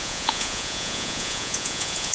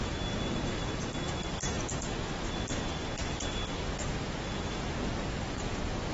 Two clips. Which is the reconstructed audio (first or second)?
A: first